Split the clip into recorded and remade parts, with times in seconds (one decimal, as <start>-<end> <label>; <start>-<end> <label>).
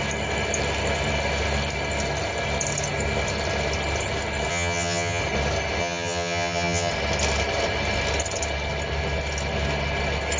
0.0-4.5 recorded; 4.5-5.2 remade; 5.2-5.8 recorded; 5.8-6.9 remade; 6.9-10.4 recorded